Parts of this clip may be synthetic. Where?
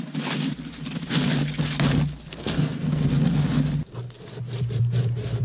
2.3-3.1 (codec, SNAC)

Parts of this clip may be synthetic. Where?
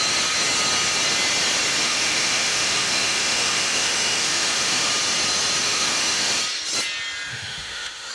1.8-4.9 (autoencoder, DAC-VAE); 5.6-6.4; 7.3-8.1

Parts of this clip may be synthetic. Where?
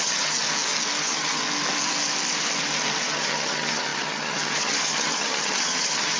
0.0-0.4 (vocoder, HiFi-GAN); 1.0-1.4; 3.1-6.2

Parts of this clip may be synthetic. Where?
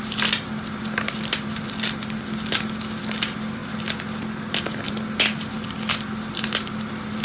none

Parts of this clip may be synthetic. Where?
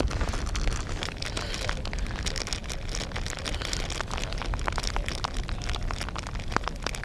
none